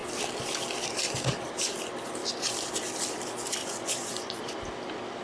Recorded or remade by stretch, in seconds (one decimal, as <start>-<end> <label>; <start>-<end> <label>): 0.0-3.6 recorded; 3.6-4.4 remade; 4.4-5.2 recorded